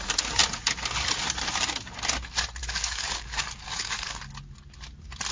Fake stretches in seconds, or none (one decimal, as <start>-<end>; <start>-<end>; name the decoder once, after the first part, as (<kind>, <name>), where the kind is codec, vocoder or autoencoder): 2.6-4.2 (codec, DAC)